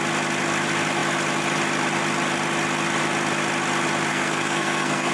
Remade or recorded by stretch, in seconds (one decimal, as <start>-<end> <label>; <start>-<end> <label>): 0.0-4.1 recorded; 4.1-5.1 remade